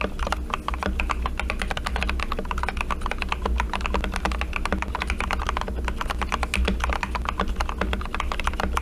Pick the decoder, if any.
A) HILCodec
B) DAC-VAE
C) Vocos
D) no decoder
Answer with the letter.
D